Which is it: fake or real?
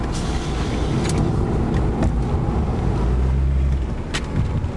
real